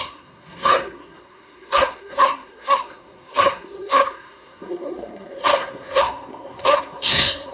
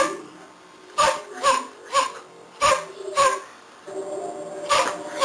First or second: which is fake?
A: first